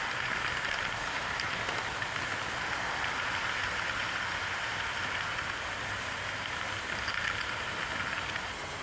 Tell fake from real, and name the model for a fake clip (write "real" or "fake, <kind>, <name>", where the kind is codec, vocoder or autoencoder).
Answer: real